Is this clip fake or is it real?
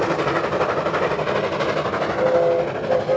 real